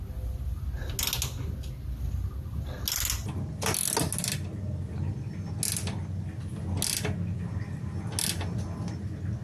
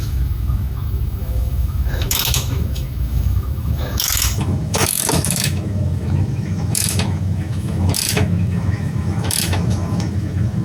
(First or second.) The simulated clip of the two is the second